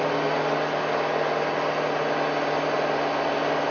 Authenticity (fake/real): real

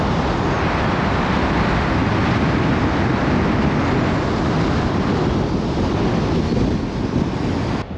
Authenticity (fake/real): real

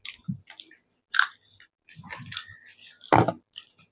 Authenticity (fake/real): real